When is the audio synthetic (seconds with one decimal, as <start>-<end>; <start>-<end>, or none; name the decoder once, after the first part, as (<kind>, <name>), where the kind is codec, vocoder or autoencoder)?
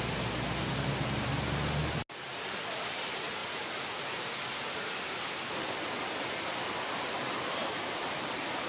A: none